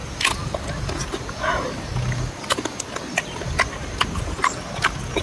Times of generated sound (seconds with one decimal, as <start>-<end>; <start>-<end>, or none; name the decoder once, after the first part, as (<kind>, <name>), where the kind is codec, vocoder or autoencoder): none